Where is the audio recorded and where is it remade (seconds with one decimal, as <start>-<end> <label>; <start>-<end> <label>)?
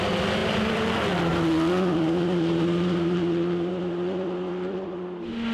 0.0-5.5 recorded